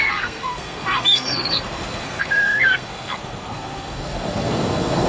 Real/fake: fake